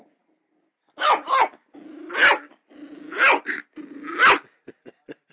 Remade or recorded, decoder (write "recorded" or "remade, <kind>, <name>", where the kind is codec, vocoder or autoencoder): recorded